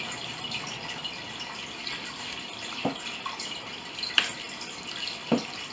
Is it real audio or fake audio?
real